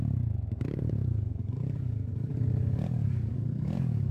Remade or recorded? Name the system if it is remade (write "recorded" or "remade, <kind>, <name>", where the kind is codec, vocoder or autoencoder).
remade, codec, DAC